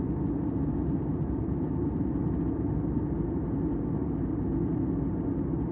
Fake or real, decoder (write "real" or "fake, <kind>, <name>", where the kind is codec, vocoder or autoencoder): real